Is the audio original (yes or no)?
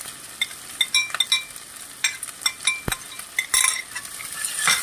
yes